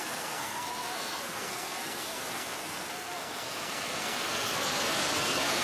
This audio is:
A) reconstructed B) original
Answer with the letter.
A